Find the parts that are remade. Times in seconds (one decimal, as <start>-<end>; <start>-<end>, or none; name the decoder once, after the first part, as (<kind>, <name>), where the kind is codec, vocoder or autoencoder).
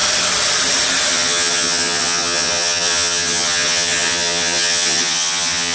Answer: 1.1-5.7 (vocoder, HiFi-GAN)